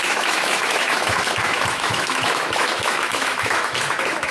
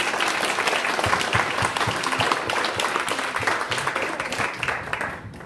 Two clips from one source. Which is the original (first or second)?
second